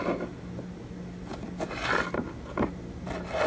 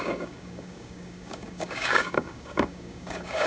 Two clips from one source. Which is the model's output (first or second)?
second